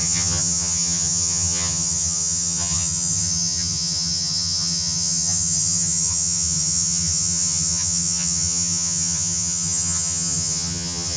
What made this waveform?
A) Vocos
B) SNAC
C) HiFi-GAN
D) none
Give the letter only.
C